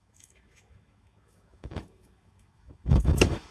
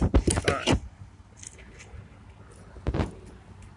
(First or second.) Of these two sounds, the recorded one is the second